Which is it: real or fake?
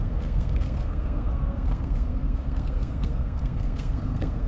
fake